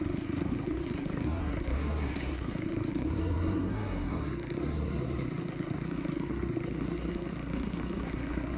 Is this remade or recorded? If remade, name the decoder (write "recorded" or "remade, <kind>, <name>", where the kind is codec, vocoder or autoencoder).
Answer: remade, codec, SNAC